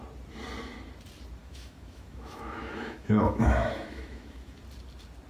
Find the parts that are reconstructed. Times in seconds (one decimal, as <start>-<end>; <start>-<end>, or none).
1.4-4.6